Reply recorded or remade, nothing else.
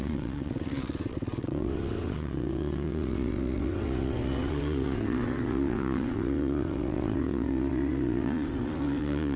remade